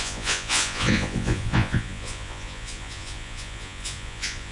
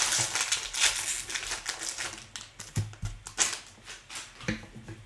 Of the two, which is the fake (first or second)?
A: first